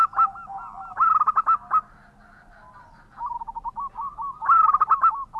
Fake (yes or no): no